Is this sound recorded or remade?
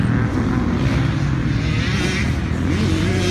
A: recorded